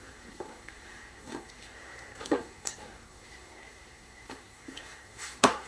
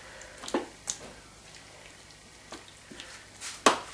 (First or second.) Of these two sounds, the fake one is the first